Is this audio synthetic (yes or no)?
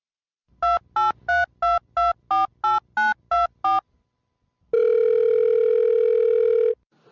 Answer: no